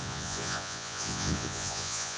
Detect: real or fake fake